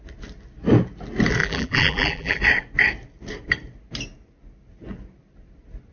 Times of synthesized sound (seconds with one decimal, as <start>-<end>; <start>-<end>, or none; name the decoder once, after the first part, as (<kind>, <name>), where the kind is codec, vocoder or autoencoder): 1.4-2.4 (vocoder, BigVGAN v2)